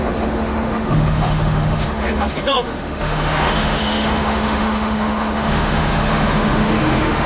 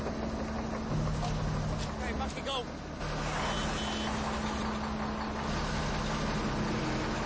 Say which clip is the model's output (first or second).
first